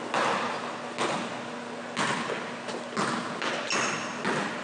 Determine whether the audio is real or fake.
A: real